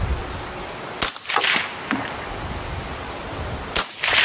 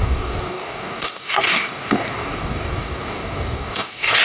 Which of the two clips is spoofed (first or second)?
second